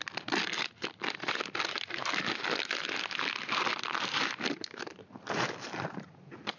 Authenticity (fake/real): real